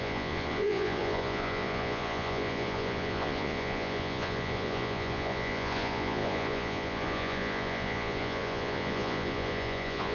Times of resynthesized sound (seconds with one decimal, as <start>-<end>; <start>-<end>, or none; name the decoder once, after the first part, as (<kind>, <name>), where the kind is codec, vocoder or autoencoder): 0.0-10.1 (vocoder, Vocos)